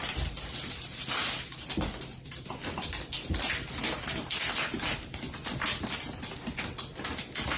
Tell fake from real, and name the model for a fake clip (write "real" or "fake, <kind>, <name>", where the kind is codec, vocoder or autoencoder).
real